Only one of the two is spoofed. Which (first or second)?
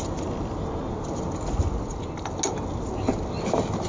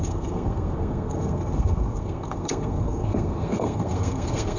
second